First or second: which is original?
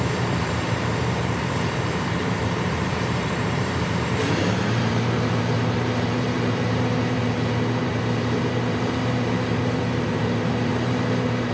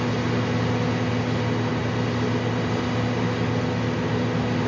second